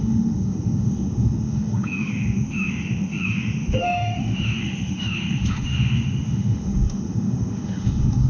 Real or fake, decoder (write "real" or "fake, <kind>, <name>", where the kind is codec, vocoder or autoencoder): fake, autoencoder, DAC-VAE